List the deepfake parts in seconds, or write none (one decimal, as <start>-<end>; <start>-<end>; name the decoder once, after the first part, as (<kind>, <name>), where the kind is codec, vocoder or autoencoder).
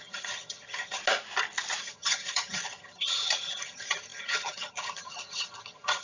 0.0-1.0 (vocoder, HiFi-GAN); 1.8-6.0